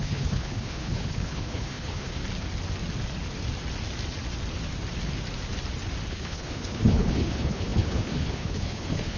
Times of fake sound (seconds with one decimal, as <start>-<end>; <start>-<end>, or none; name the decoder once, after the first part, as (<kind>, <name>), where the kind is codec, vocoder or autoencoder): 0.0-2.2 (codec, HILCodec); 6.1-9.2

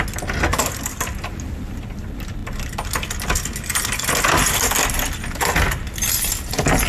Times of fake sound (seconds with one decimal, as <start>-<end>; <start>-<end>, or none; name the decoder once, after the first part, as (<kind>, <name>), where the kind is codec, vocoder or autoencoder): none

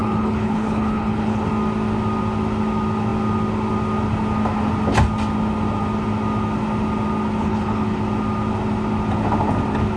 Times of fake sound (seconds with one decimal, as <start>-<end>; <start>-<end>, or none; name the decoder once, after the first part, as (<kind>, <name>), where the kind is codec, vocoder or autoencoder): 0.0-1.5 (codec, HILCodec); 7.4-8.0

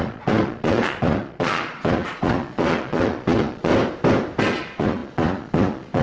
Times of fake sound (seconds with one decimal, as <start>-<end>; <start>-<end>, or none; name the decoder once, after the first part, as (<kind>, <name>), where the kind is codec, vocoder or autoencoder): 0.0-3.7 (vocoder, Vocos); 4.4-6.0